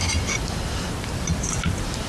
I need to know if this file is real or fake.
real